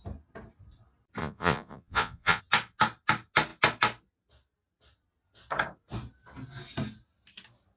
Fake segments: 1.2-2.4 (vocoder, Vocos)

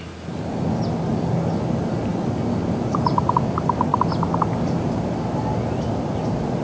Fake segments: none

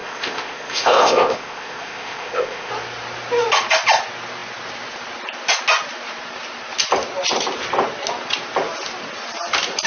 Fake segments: 0.0-2.7 (codec, ZipCodec)